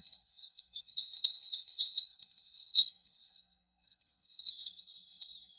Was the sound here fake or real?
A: fake